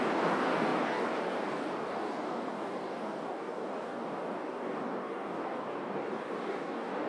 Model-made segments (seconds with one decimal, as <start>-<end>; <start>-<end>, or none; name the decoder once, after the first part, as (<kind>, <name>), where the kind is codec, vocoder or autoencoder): 0.0-7.1 (codec, DAC)